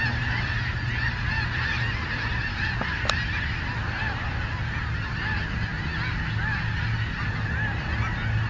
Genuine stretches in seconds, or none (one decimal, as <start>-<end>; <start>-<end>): 0.0-8.5